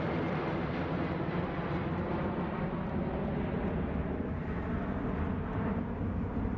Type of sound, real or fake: real